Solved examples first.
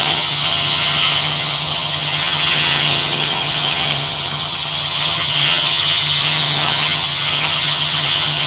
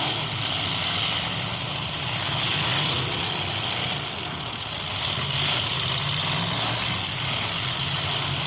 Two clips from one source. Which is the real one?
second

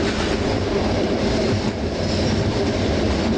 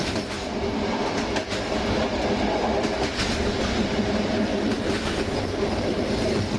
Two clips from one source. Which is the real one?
second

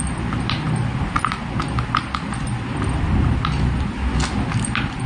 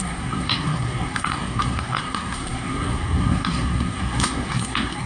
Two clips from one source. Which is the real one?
first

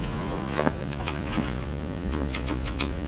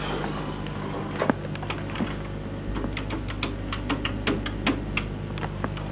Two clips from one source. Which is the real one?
second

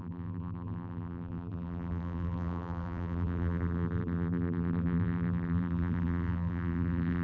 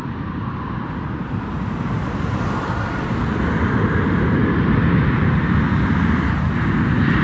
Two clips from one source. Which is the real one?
second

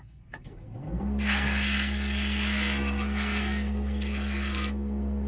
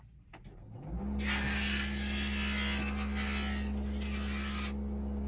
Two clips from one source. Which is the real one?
second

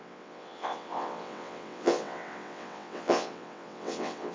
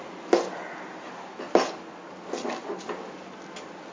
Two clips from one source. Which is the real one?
second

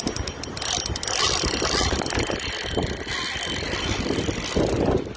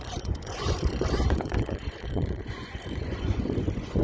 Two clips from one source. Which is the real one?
first